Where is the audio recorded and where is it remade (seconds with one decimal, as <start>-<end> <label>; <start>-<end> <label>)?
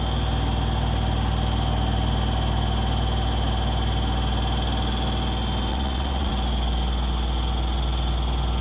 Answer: 0.0-5.7 recorded; 5.7-6.3 remade; 6.3-8.6 recorded